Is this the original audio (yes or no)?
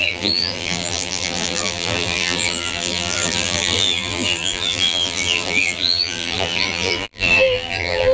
no